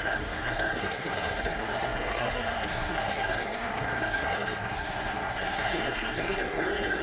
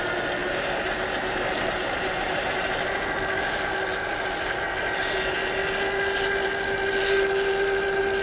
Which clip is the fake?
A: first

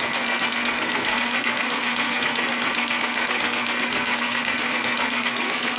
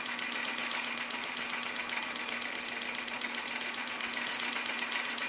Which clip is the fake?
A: first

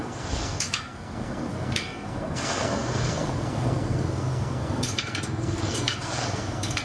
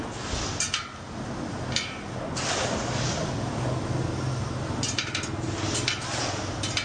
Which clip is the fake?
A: first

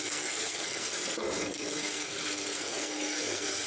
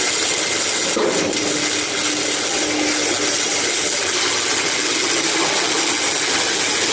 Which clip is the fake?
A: first